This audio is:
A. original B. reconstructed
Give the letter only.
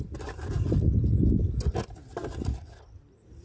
A